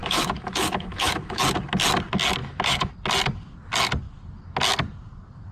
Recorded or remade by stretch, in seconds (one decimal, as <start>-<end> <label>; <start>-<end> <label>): 0.0-1.4 remade; 1.4-2.4 recorded; 2.4-2.9 remade; 2.9-5.5 recorded